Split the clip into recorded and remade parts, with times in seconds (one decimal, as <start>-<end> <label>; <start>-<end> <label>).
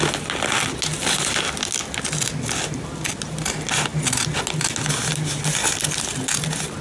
0.0-6.8 recorded